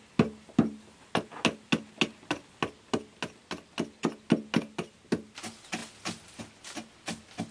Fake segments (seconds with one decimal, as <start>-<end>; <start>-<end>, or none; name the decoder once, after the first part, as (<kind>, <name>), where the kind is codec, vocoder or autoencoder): none